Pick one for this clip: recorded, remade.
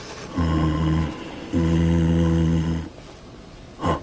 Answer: recorded